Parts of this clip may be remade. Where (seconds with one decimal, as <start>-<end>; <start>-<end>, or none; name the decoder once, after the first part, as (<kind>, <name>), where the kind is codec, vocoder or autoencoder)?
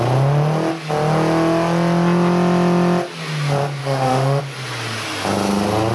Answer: 3.8-4.4 (autoencoder, DAC-VAE)